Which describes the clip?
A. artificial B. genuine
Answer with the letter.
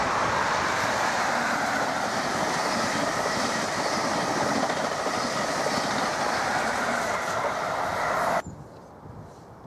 A